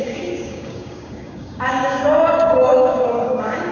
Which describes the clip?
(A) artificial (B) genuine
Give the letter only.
A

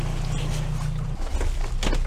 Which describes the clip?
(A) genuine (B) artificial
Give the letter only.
A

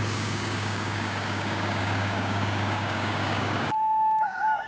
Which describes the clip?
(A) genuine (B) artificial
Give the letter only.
B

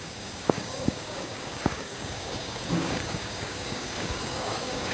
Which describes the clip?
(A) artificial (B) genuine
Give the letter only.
A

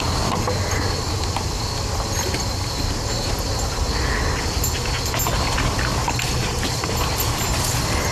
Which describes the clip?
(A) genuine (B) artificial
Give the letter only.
A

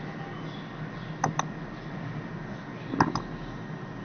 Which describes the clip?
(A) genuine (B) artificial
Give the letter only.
A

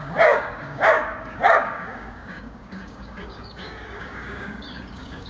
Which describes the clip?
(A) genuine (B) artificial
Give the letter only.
B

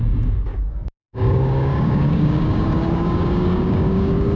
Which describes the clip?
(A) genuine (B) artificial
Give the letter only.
B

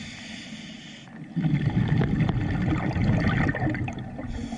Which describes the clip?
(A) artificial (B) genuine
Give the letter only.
B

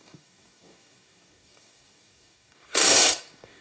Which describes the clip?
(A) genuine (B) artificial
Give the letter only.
B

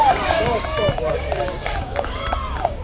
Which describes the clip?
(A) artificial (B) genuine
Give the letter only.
A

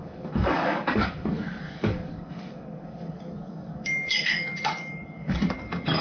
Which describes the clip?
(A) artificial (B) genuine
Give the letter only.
A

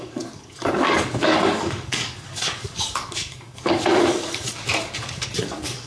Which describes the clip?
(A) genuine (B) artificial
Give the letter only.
B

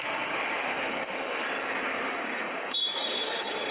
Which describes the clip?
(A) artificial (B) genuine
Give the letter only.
A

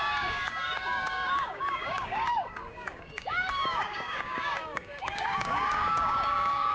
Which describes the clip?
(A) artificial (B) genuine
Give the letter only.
A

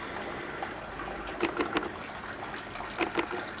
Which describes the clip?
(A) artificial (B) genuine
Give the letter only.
B